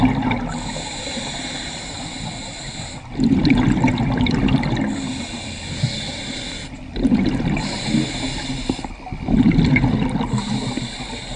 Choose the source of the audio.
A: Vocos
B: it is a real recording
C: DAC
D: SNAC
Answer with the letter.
B